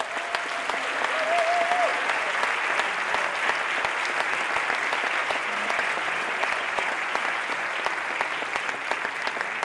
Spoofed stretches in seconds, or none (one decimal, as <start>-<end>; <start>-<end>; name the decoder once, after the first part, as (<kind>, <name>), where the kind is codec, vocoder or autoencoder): 1.9-2.4 (vocoder, Vocos); 5.2-7.7